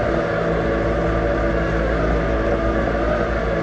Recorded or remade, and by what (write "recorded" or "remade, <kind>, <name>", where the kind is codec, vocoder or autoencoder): recorded